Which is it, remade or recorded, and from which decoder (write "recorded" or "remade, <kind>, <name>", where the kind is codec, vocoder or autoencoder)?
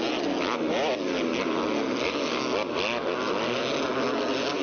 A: recorded